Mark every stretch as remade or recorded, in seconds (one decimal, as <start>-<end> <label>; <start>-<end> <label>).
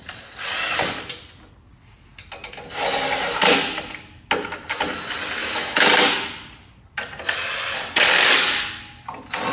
0.0-5.4 recorded; 5.4-5.9 remade; 5.9-9.5 recorded